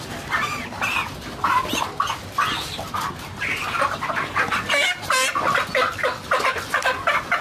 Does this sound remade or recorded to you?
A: recorded